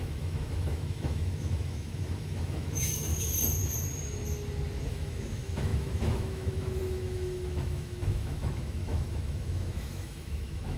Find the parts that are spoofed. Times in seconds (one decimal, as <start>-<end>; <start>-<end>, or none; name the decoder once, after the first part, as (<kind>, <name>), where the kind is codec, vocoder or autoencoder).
0.0-3.1 (autoencoder, DAC-VAE); 4.9-10.8